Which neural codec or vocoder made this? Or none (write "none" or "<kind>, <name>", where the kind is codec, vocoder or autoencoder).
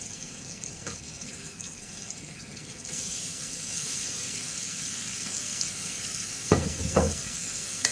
codec, SNAC